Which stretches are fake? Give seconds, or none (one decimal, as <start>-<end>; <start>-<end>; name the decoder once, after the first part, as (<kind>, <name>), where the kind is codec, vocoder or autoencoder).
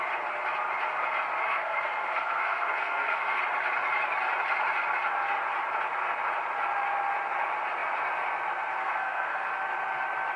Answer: 1.4-3.4 (codec, SNAC); 8.8-9.5